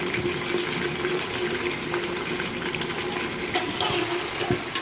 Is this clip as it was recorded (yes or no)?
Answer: yes